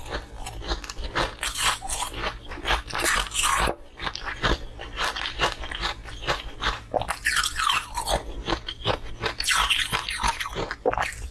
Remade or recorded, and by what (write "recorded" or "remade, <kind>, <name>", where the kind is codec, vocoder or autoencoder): recorded